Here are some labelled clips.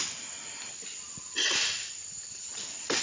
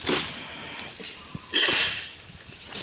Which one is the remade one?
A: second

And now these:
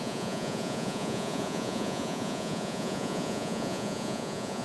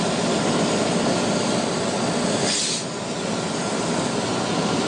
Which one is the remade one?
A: first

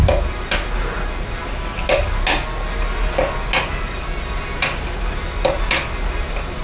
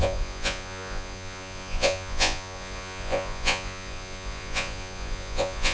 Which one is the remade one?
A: second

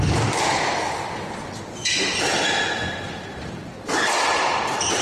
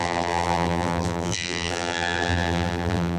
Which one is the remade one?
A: second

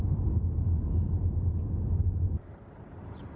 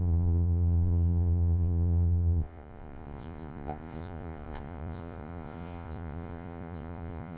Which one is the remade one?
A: second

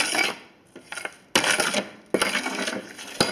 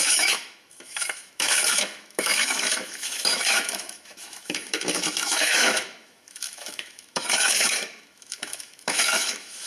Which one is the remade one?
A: second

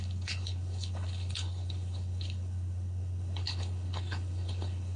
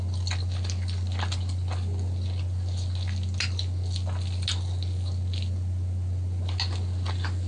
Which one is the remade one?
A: first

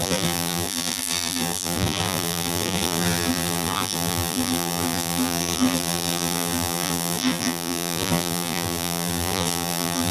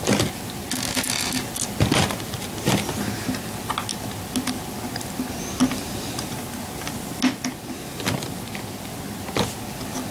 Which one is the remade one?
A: first